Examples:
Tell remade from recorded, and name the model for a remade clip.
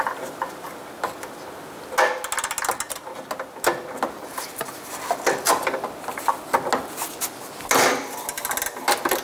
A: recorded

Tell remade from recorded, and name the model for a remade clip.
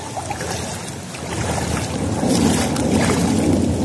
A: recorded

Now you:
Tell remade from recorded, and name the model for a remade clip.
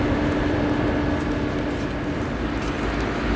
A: recorded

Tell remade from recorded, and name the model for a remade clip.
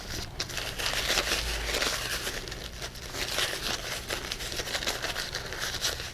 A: recorded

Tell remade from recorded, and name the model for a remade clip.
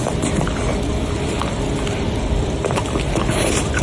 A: recorded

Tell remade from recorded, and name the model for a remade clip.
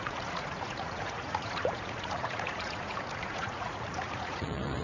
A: remade, vocoder, Vocos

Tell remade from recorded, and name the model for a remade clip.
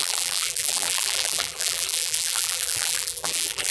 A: remade, vocoder, BigVGAN v2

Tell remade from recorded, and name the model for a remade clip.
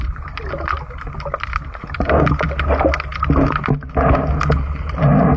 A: recorded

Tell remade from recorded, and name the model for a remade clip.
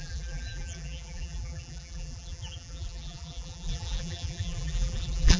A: remade, vocoder, BigVGAN v2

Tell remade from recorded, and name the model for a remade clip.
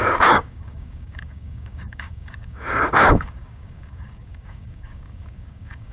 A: remade, codec, DAC